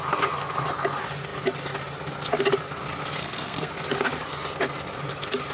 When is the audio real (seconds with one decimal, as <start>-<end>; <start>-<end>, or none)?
0.0-3.2; 3.7-5.5